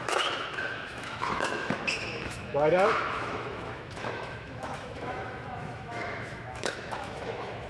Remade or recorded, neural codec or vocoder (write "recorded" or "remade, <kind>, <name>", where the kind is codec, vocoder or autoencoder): remade, autoencoder, DAC-VAE